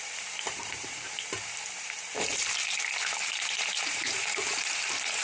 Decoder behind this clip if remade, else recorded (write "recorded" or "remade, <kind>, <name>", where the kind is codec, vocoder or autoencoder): remade, vocoder, BigVGAN v2